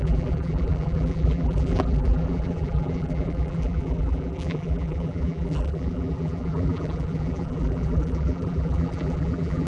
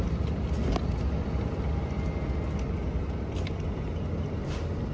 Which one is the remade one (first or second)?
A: first